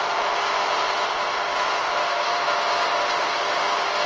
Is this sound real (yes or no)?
no